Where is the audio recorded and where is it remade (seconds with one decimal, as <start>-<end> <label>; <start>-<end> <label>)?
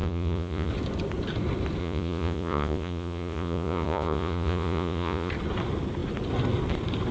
0.0-0.7 remade; 0.7-1.8 recorded; 1.8-5.3 remade; 5.3-7.1 recorded